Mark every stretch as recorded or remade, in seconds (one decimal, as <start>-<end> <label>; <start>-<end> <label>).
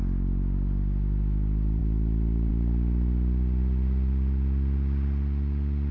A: 0.0-5.9 recorded